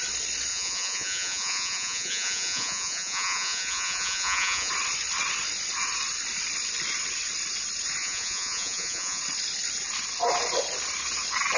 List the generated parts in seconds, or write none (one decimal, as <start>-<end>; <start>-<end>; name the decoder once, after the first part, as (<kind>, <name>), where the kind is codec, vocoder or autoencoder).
0.5-4.7 (vocoder, Vocos); 8.0-9.2